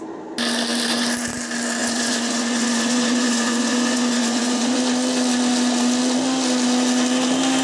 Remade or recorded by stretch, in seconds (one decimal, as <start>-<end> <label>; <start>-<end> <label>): 0.0-1.8 recorded; 1.8-4.8 remade; 4.8-7.6 recorded